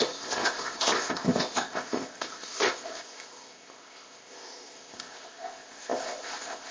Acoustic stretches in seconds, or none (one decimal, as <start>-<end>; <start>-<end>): none